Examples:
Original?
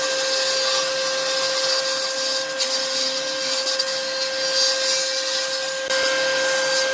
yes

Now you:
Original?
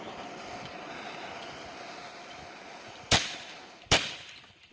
yes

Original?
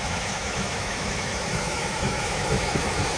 no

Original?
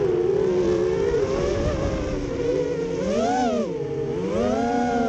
yes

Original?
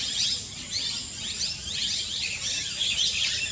yes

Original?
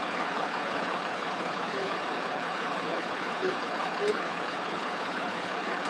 no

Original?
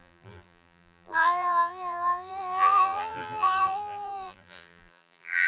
no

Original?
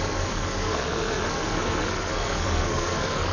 no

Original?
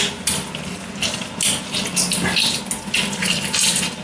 yes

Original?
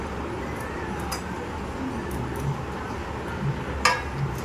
yes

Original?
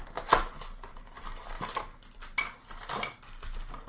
yes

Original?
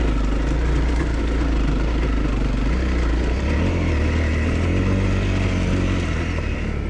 yes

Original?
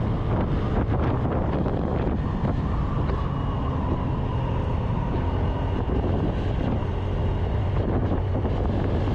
yes